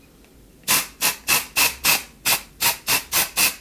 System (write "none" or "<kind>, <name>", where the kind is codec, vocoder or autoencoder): none